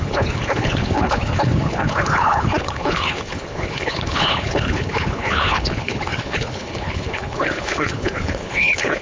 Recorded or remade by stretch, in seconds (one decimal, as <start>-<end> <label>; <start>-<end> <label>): 0.0-9.0 remade